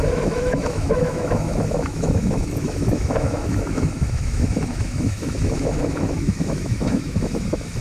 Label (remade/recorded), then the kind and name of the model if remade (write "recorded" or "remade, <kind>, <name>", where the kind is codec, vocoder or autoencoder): remade, autoencoder, DAC-VAE